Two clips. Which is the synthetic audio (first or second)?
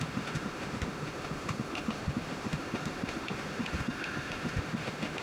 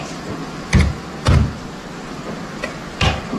first